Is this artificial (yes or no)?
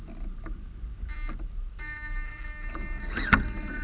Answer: no